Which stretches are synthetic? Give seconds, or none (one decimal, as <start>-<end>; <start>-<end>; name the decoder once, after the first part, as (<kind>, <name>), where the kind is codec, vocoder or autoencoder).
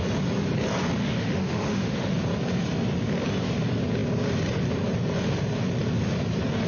1.0-2.1 (autoencoder, DAC-VAE)